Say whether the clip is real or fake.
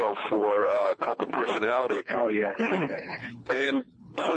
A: fake